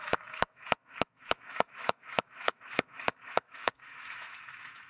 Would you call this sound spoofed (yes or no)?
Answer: yes